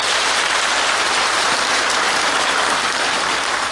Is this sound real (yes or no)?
no